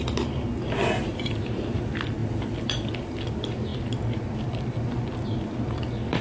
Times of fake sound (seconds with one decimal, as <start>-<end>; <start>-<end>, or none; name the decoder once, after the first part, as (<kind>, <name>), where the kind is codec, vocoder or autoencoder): none